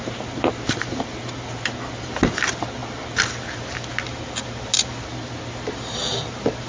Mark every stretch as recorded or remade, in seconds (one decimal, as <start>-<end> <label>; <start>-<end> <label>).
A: 0.0-6.7 recorded